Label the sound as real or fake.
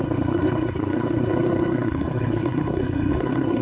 fake